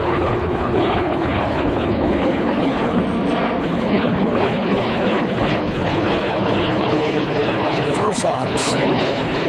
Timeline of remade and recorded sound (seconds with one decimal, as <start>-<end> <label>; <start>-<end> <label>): 0.0-3.0 remade; 3.0-3.6 recorded; 3.6-9.5 remade